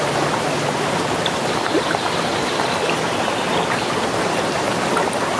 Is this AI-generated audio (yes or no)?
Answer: no